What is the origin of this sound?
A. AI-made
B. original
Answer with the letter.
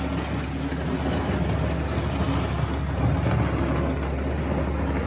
B